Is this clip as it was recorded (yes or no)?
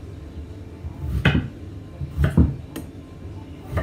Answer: yes